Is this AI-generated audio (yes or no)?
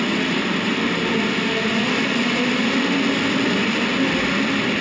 no